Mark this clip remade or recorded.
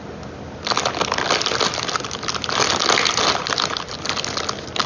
recorded